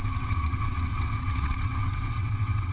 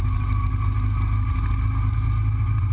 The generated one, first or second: first